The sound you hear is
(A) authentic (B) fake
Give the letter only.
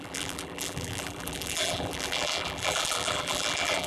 B